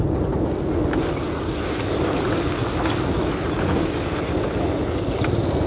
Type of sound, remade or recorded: recorded